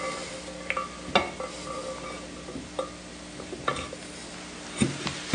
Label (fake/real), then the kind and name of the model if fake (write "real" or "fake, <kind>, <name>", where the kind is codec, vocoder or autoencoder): real